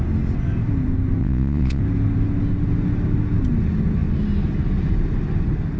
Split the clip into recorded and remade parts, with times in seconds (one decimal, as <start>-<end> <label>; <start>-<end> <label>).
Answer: 0.0-1.2 recorded; 1.2-1.8 remade; 1.8-5.8 recorded